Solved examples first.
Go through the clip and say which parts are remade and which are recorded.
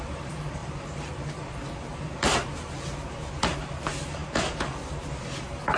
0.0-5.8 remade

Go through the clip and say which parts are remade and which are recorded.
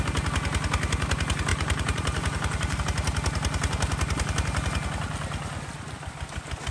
0.0-1.5 recorded; 1.5-2.8 remade; 2.8-6.7 recorded